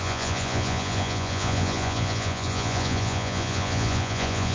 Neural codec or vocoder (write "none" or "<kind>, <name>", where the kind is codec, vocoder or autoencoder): vocoder, Vocos